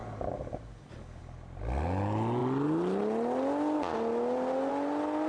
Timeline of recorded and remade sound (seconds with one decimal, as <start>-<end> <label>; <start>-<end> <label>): 0.0-5.3 recorded